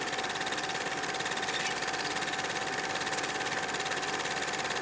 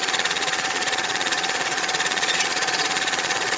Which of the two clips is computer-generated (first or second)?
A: second